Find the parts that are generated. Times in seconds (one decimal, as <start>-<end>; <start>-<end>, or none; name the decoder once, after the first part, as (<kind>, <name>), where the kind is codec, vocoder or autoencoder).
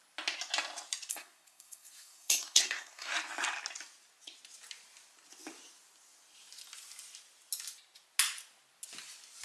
1.1-3.1 (codec, SNAC)